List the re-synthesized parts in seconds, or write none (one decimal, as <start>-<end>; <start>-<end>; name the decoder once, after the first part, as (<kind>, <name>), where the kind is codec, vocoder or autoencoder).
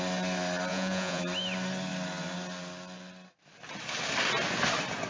0.7-1.2 (vocoder, Vocos)